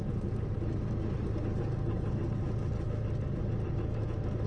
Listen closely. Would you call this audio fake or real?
real